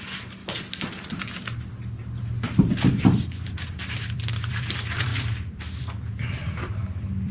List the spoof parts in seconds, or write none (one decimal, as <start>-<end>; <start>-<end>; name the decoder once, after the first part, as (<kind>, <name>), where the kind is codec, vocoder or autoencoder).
0.0-0.4 (vocoder, BigVGAN v2); 2.2-7.3